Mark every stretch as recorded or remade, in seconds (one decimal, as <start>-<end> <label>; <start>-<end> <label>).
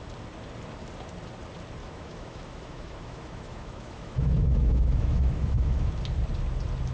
0.0-1.8 recorded; 1.8-5.9 remade; 5.9-6.9 recorded